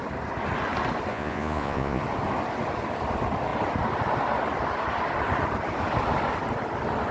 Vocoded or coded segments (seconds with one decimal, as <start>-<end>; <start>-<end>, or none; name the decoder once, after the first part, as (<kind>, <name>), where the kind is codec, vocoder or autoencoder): 1.1-2.0 (vocoder, Vocos)